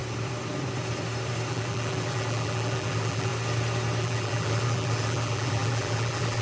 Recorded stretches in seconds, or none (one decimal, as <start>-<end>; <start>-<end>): 0.0-1.5; 3.3-4.0